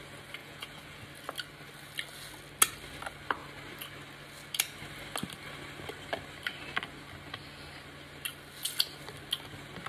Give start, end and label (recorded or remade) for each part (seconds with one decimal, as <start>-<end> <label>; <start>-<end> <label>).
0.0-0.4 recorded; 0.4-1.0 remade; 1.0-9.9 recorded